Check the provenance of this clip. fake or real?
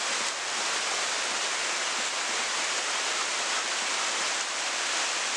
real